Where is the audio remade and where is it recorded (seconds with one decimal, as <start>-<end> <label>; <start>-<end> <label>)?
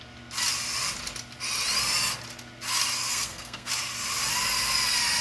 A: 0.0-3.1 recorded; 3.1-3.7 remade; 3.7-5.2 recorded